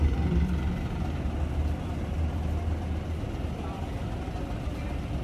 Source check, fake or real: real